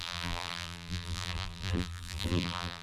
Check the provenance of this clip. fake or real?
fake